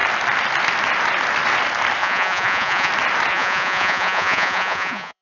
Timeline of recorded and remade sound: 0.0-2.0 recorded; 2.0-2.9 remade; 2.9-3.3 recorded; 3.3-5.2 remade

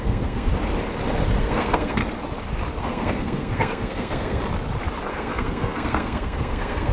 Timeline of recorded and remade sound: 0.0-0.5 remade; 0.5-1.4 recorded; 1.4-2.0 remade; 2.0-2.8 recorded; 2.8-4.4 remade; 4.4-5.1 recorded; 5.1-6.9 remade